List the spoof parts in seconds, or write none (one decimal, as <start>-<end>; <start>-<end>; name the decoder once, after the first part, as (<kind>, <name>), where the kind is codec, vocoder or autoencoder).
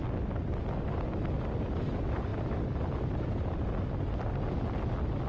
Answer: none